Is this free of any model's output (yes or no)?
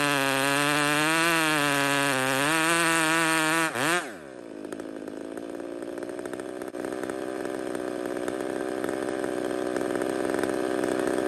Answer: yes